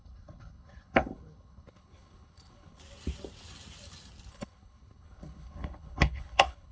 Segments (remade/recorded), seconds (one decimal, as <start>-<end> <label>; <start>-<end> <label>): 0.0-2.8 remade; 2.8-4.3 recorded; 4.3-6.7 remade